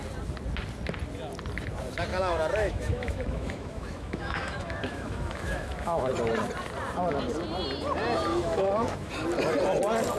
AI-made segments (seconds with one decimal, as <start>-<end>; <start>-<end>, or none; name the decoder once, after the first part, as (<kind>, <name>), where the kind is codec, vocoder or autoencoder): 2.1-6.1 (autoencoder, DAC-VAE); 8.3-9.1